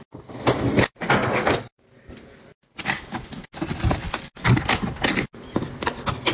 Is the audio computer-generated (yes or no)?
no